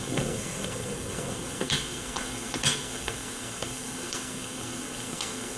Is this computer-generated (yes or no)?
yes